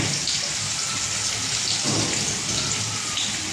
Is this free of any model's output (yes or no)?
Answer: yes